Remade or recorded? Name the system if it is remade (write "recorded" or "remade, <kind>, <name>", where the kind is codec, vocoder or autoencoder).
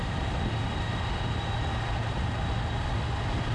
recorded